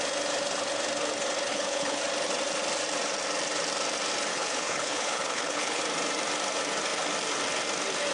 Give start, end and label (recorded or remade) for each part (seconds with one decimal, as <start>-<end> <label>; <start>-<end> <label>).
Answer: 0.0-1.5 recorded; 1.5-2.0 remade; 2.0-4.3 recorded; 4.3-5.8 remade; 5.8-8.1 recorded